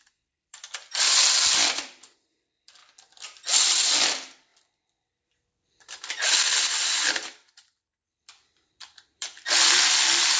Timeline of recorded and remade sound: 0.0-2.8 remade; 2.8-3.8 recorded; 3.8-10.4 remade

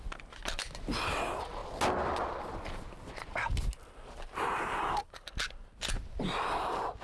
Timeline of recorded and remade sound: 0.0-7.0 recorded